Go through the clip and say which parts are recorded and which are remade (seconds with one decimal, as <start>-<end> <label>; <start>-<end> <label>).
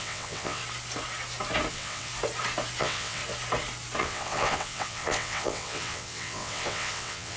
0.0-0.6 remade; 0.6-1.7 recorded; 1.7-2.1 remade; 2.1-2.8 recorded; 2.8-3.2 remade; 3.2-4.0 recorded; 4.0-7.4 remade